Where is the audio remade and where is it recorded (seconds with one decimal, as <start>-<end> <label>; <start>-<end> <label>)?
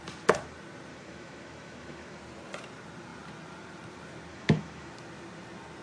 0.0-0.9 recorded; 0.9-2.2 remade; 2.2-4.3 recorded; 4.3-4.9 remade; 4.9-5.8 recorded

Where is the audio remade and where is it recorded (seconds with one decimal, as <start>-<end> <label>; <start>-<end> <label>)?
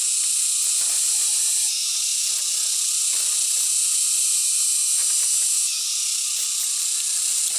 0.0-7.6 recorded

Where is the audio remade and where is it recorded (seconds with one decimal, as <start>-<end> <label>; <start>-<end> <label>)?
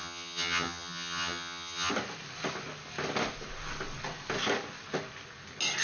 0.0-1.9 remade; 1.9-5.8 recorded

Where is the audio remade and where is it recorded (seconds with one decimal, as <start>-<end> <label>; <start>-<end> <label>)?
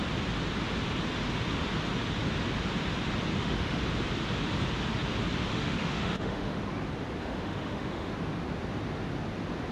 0.0-3.3 recorded; 3.3-3.8 remade; 3.8-5.5 recorded; 5.5-6.6 remade; 6.6-7.2 recorded; 7.2-8.1 remade; 8.1-9.7 recorded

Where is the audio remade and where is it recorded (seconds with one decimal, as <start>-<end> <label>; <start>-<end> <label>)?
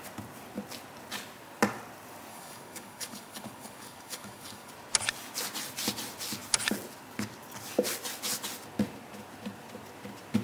0.0-2.3 recorded; 2.3-4.7 remade; 4.7-10.4 recorded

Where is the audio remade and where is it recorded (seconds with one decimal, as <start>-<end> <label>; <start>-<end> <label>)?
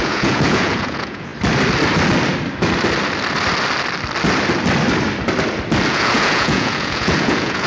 0.0-1.3 remade; 1.3-5.9 recorded; 5.9-7.7 remade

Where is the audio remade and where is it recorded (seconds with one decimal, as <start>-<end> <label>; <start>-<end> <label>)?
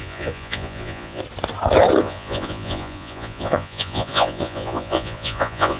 0.0-1.2 remade; 1.2-2.0 recorded; 2.0-5.8 remade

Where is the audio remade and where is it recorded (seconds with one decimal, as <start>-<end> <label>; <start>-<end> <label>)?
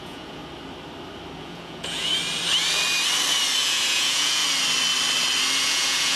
0.0-0.4 remade; 0.4-1.4 recorded; 1.4-2.1 remade; 2.1-3.6 recorded; 3.6-4.4 remade; 4.4-5.6 recorded; 5.6-6.2 remade